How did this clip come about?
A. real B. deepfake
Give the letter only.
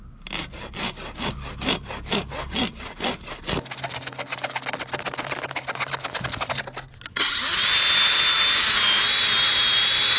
A